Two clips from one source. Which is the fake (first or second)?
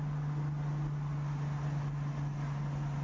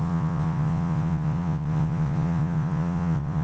second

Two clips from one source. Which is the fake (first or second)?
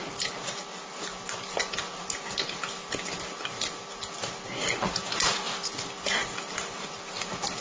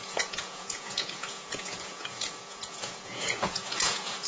second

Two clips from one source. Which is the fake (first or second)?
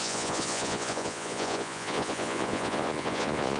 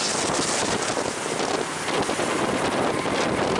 first